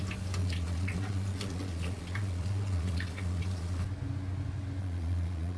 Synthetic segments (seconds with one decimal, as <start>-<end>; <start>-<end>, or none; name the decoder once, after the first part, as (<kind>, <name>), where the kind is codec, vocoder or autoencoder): 0.4-3.8 (vocoder, Vocos); 4.8-5.6